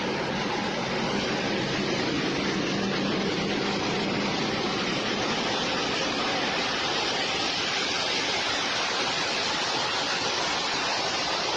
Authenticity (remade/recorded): recorded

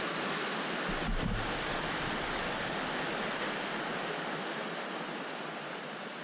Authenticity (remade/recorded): recorded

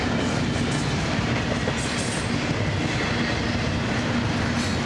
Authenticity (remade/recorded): recorded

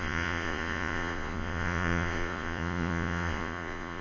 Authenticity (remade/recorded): remade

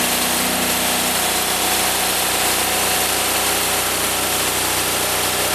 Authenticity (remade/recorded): recorded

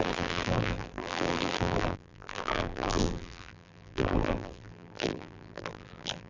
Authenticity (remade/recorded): remade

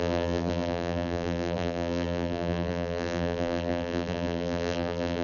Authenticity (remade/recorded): remade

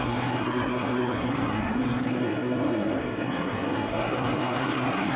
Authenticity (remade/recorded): remade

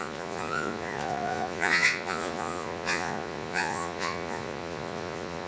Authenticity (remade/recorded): remade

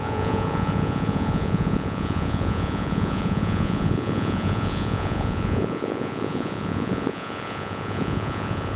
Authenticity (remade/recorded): remade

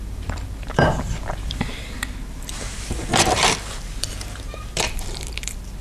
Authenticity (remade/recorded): remade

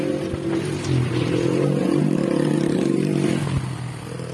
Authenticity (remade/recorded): recorded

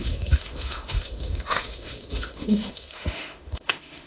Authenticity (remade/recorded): remade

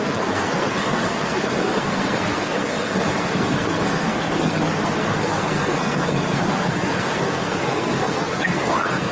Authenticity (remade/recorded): remade